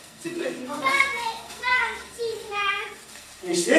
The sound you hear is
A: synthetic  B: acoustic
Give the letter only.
A